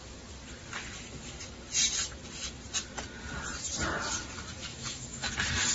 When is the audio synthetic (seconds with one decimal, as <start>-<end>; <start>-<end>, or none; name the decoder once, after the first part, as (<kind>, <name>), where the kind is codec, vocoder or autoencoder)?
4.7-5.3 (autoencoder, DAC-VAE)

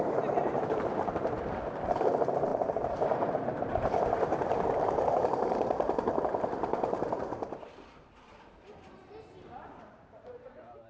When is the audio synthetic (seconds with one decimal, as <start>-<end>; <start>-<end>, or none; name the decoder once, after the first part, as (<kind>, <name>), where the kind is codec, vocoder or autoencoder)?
0.0-10.9 (vocoder, BigVGAN v2)

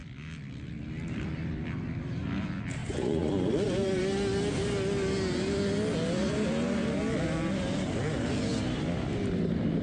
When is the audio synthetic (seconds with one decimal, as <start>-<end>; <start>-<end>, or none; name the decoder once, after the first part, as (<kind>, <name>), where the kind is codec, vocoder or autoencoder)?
2.8-4.0 (vocoder, Vocos)